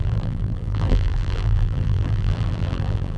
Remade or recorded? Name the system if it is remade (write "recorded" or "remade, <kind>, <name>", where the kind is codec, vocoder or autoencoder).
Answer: remade, vocoder, BigVGAN v2